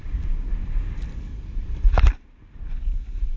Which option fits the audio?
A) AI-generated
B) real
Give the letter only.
B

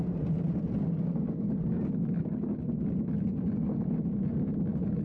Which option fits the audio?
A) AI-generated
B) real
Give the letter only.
B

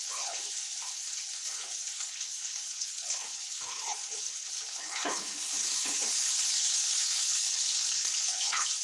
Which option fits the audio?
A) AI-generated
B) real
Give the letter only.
A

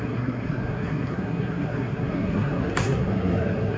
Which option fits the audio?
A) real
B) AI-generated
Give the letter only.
B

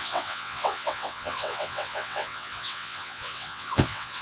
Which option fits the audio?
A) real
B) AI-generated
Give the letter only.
B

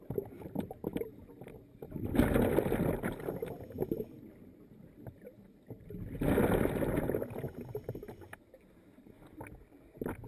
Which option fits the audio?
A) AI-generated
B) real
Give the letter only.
B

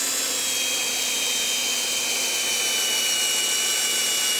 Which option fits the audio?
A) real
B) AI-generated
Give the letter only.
A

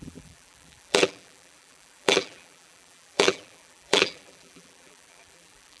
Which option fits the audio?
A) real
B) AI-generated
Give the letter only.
B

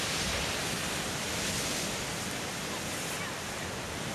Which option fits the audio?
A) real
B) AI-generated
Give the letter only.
A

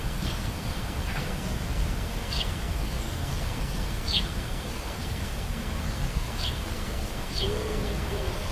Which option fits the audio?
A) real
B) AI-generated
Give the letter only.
B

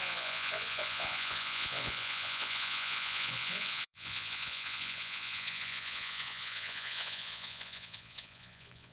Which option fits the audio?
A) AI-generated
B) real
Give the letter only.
A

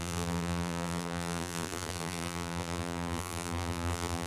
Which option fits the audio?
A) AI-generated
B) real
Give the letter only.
A